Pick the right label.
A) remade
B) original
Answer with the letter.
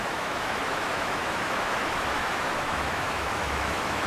A